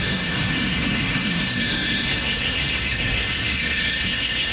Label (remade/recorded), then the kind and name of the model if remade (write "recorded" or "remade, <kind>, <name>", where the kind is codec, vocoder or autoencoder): remade, codec, SNAC